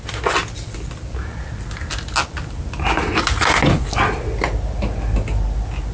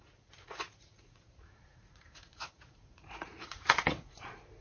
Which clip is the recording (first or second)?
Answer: first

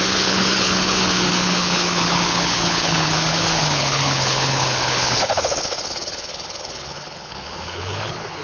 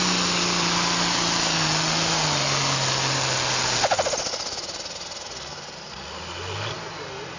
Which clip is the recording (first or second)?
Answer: second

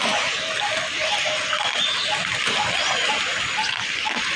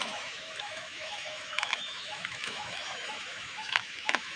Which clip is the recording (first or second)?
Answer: first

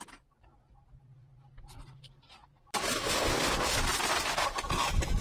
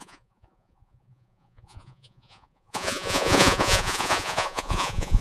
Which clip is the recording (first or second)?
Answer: first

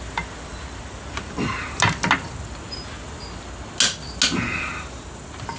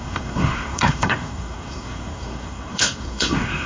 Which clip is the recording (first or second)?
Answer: first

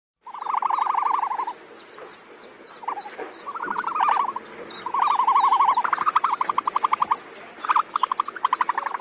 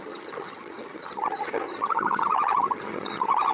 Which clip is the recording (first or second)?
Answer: first